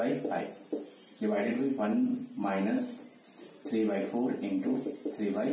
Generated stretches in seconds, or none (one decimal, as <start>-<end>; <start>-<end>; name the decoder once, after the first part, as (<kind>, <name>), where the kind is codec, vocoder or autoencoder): 2.1-3.5 (vocoder, BigVGAN v2)